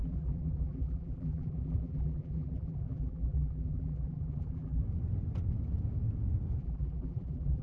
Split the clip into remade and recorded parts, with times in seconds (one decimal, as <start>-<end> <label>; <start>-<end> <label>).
0.0-4.8 remade; 4.8-6.6 recorded; 6.6-7.6 remade